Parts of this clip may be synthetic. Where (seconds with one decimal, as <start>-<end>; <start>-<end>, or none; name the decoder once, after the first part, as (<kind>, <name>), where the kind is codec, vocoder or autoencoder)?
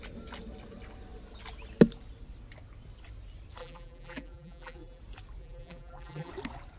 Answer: 3.6-5.0 (vocoder, BigVGAN v2); 5.4-6.3